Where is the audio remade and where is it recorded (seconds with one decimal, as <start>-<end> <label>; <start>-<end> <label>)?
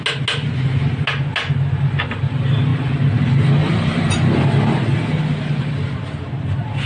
0.0-2.7 recorded; 2.7-3.2 remade; 3.2-3.6 recorded; 3.6-4.7 remade; 4.7-6.9 recorded